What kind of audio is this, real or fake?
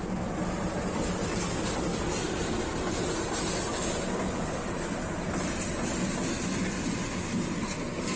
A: real